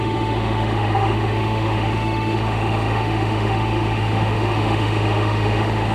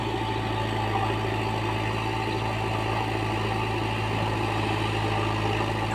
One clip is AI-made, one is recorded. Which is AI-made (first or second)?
first